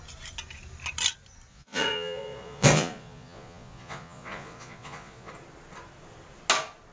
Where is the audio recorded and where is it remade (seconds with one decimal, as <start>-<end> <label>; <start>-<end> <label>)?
0.0-1.5 recorded; 1.5-5.3 remade; 5.3-6.9 recorded